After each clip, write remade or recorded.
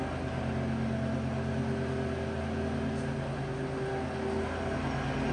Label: recorded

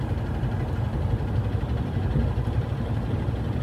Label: remade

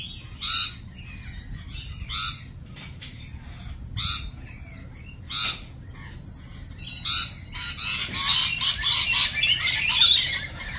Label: recorded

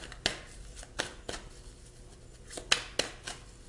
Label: recorded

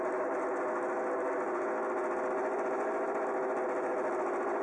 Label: recorded